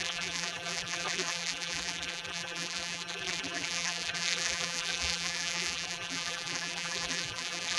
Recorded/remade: remade